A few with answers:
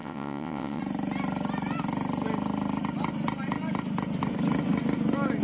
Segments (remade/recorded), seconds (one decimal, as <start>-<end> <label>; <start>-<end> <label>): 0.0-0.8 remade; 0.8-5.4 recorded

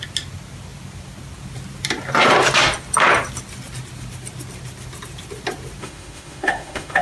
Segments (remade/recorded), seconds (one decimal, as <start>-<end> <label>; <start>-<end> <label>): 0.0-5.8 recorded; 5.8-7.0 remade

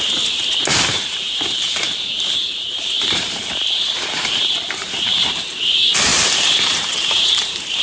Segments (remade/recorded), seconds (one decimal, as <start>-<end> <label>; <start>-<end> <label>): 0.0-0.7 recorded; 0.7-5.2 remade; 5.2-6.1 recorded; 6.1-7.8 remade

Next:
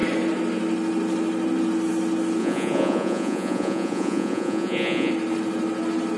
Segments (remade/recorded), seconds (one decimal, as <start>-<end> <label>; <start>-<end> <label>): 0.0-2.4 recorded; 2.4-5.1 remade; 5.1-6.2 recorded

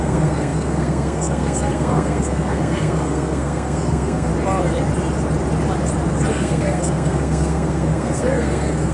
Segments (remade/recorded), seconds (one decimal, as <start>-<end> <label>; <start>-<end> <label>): 0.0-4.3 remade; 4.3-6.3 recorded; 6.3-8.9 remade

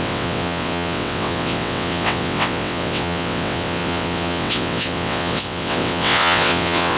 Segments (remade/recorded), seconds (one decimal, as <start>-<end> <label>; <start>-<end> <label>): 0.0-7.0 remade